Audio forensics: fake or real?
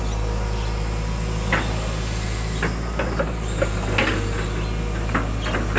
real